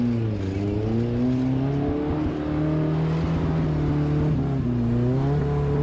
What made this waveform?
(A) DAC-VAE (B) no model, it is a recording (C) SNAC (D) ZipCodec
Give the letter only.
B